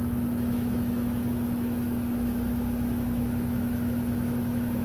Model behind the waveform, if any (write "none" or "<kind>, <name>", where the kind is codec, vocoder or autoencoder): autoencoder, DAC-VAE